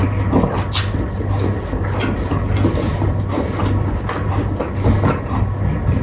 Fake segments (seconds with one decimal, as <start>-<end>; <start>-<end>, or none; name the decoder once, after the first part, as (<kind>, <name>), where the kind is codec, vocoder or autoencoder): none